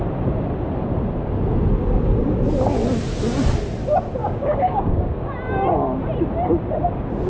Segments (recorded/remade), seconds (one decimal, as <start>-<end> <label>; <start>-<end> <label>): 0.0-4.2 recorded; 4.2-5.1 remade; 5.1-7.3 recorded